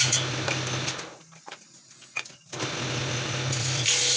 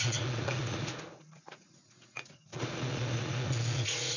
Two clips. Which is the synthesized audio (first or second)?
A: second